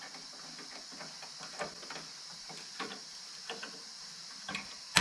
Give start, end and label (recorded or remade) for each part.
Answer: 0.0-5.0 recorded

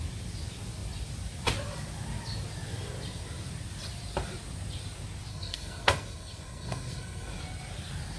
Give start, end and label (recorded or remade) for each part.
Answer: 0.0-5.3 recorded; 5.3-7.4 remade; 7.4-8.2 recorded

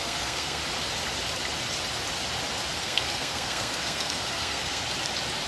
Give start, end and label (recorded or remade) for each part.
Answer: 0.0-0.6 remade; 0.6-2.8 recorded; 2.8-4.8 remade; 4.8-5.5 recorded

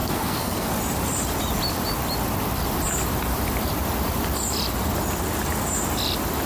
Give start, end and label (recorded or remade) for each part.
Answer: 0.0-0.7 remade; 0.7-6.5 recorded